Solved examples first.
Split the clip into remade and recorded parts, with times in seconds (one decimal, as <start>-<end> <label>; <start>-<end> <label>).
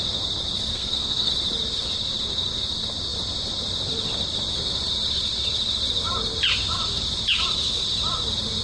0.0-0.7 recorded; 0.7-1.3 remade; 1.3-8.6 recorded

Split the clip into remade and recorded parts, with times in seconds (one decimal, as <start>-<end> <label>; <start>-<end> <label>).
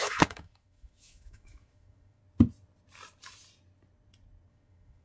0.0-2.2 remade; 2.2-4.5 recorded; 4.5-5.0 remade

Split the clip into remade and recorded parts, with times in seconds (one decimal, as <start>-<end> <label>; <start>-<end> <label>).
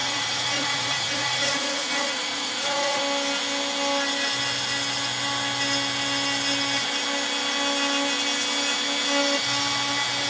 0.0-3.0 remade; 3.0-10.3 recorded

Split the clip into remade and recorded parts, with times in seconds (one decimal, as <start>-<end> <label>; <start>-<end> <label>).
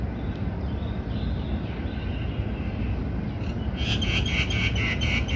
0.0-5.4 recorded